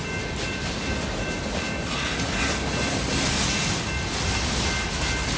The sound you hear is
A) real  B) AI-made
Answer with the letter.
A